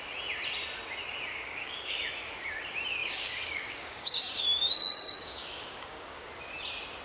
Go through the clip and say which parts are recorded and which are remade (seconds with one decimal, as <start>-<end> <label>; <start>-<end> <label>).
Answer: 0.0-1.3 recorded; 1.3-2.1 remade; 2.1-3.0 recorded; 3.0-6.3 remade; 6.3-7.0 recorded